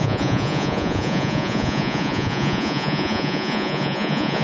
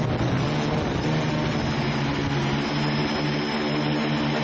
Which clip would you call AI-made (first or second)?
first